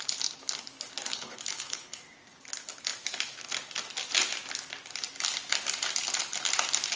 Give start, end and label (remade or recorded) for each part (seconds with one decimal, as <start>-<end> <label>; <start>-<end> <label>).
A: 0.0-1.1 recorded; 1.1-2.0 remade; 2.0-7.0 recorded